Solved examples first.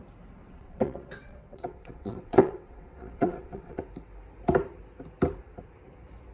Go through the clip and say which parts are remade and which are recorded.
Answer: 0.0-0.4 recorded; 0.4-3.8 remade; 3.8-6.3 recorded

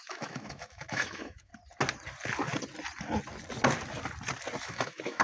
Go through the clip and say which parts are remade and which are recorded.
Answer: 0.0-1.5 remade; 1.5-4.6 recorded; 4.6-5.2 remade